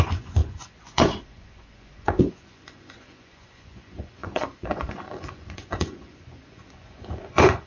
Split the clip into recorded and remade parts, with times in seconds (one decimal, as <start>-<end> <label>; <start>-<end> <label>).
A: 0.0-7.7 remade